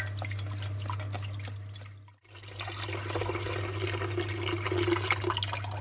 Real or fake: real